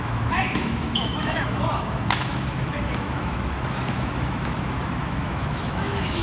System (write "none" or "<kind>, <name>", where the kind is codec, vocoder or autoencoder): autoencoder, DAC-VAE